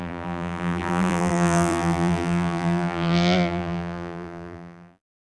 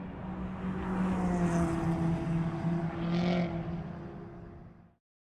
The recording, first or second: second